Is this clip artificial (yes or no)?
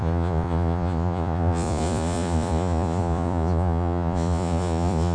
yes